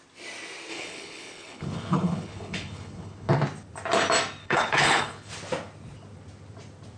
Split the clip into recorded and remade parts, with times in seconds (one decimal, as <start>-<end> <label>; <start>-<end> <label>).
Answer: 0.0-0.7 recorded; 0.7-3.3 remade; 3.3-4.4 recorded; 4.4-5.3 remade; 5.3-7.0 recorded